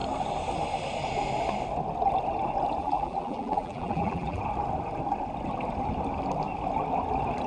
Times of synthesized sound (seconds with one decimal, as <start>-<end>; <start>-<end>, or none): 2.8-4.4

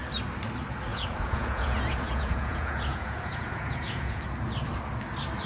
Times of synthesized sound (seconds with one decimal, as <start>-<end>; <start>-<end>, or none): 0.9-4.2

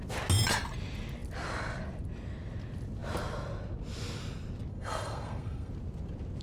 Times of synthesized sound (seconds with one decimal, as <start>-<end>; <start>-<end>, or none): 4.7-5.7

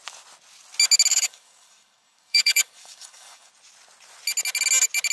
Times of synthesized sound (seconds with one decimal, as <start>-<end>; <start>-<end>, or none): 1.1-3.5

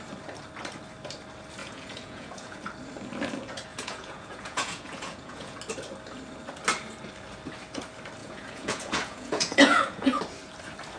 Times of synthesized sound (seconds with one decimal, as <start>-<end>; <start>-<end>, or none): 1.6-2.6; 3.7-5.6; 8.2-10.2